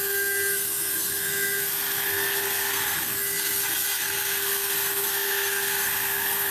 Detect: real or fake fake